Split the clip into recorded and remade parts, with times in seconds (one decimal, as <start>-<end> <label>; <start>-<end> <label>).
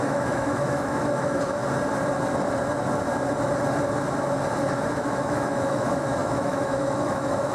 0.0-1.6 remade; 1.6-4.9 recorded; 4.9-7.5 remade